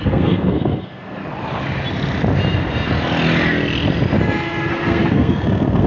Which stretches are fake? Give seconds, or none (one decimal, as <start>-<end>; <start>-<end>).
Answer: 0.0-1.2; 4.7-5.9